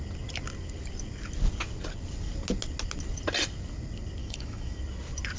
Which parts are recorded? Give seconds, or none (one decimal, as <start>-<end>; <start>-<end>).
0.0-4.2; 4.8-5.4